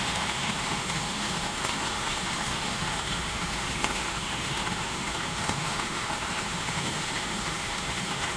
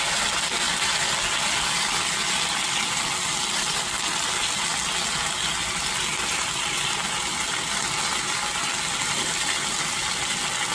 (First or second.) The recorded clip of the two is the second